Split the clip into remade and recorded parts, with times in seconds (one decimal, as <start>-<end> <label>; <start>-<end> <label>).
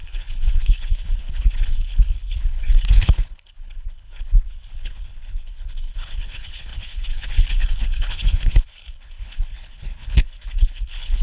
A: 0.0-11.2 remade